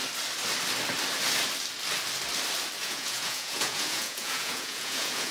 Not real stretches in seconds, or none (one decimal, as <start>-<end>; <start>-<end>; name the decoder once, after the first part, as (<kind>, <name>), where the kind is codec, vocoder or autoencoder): 2.8-5.3 (vocoder, Vocos)